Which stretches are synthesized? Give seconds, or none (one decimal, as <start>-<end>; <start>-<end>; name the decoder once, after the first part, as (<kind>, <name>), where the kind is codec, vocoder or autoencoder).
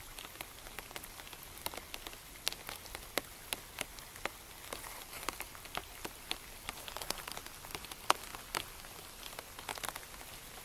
none